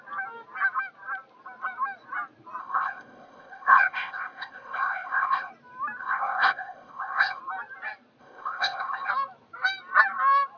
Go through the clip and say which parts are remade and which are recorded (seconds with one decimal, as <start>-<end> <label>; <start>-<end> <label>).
0.0-2.6 recorded; 2.6-5.5 remade; 5.5-6.0 recorded; 6.0-7.4 remade; 7.4-8.2 recorded; 8.2-9.1 remade; 9.1-10.6 recorded